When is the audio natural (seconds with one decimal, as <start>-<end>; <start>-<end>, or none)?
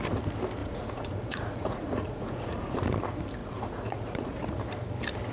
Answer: 0.0-0.6; 2.9-3.4; 4.6-5.3